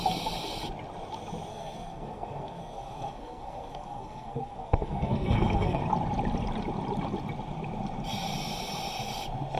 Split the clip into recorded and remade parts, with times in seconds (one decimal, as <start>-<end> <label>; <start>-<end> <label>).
0.0-1.5 recorded; 1.5-5.8 remade; 5.8-9.6 recorded